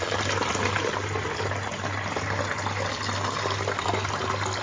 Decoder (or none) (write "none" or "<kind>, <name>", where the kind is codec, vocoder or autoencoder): none